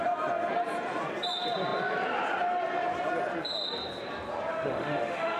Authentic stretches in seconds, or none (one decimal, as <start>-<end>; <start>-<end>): 0.0-4.5